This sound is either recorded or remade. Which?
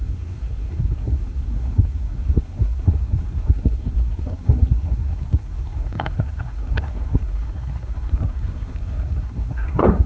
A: remade